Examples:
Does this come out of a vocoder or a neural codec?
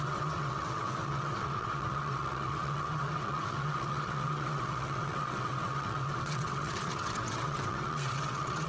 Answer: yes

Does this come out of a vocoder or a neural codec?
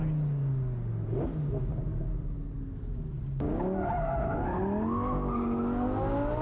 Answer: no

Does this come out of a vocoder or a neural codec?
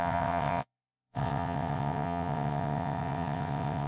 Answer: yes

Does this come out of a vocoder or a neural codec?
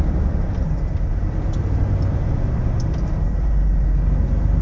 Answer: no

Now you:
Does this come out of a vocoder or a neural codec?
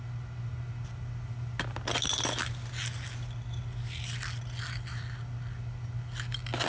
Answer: no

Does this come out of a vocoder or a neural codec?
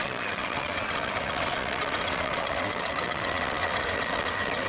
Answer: yes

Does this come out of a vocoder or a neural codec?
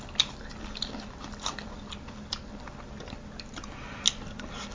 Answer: no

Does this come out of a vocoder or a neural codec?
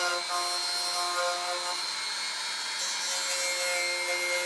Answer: no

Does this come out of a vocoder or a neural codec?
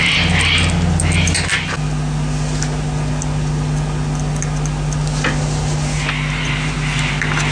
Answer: no